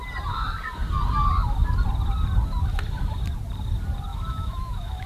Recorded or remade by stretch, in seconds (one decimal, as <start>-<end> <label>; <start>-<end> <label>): 0.0-4.1 recorded; 4.1-5.1 remade